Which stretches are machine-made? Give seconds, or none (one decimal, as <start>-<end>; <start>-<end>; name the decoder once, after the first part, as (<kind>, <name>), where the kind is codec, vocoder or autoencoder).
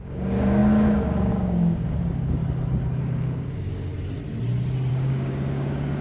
0.0-2.4 (codec, DAC); 3.0-3.9; 4.9-6.0